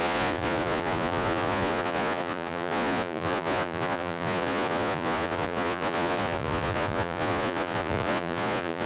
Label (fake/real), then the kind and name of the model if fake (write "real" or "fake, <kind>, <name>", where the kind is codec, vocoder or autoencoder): fake, vocoder, Vocos